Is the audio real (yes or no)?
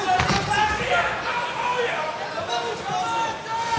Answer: yes